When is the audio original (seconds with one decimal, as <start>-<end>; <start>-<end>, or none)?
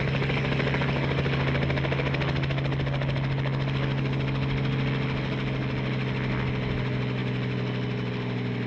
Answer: 0.0-8.7